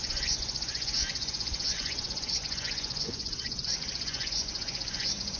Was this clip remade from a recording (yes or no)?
yes